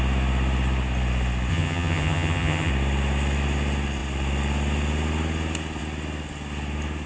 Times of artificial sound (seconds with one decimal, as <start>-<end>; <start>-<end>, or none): 1.5-2.7